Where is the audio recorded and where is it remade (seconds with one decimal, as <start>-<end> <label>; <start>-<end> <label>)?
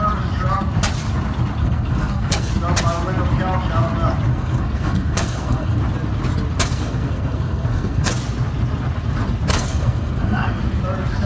0.0-1.6 recorded; 1.6-2.5 remade; 2.5-4.3 recorded; 4.3-5.8 remade; 5.8-6.7 recorded; 6.7-8.1 remade; 8.1-9.5 recorded; 9.5-10.6 remade; 10.6-11.3 recorded